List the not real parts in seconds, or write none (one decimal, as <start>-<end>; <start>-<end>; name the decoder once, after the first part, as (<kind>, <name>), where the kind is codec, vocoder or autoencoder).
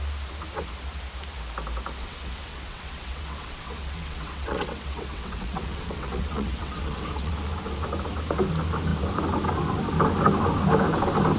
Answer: 2.0-7.3 (vocoder, WaveNeXt)